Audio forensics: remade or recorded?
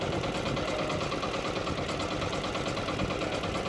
recorded